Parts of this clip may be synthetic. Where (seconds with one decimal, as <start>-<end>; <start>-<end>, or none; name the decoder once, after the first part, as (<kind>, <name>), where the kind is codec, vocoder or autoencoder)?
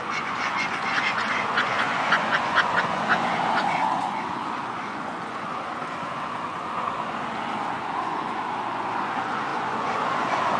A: 0.0-10.6 (vocoder, Vocos)